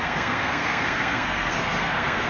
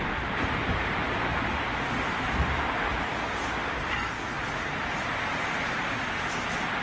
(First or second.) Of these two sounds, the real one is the second